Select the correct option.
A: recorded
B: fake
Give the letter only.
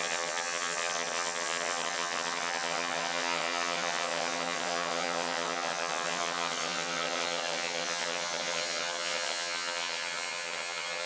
B